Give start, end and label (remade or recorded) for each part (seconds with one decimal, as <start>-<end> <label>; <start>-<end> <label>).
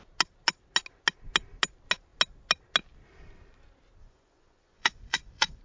0.0-4.0 recorded; 4.0-5.6 remade